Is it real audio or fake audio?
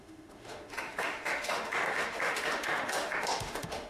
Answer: fake